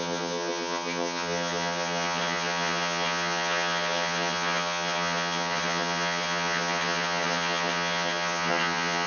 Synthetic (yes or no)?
yes